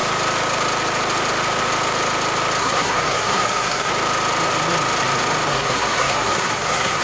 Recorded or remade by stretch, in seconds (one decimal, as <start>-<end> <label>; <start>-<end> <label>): 0.0-2.6 recorded; 2.6-3.9 remade; 3.9-5.5 recorded; 5.5-7.0 remade